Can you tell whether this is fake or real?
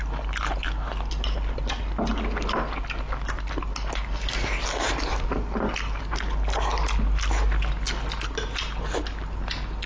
real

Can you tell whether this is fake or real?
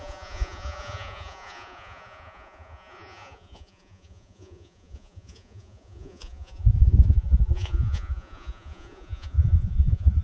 fake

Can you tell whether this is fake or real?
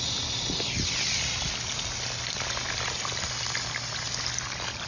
real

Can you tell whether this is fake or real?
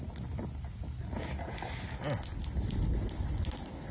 real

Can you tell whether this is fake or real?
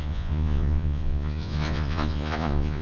fake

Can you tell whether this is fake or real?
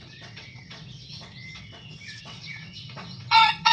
fake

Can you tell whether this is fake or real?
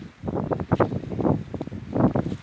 real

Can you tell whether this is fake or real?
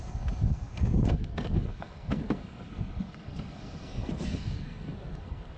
fake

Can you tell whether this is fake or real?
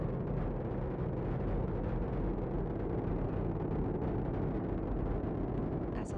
real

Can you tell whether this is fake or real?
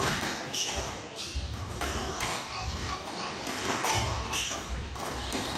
fake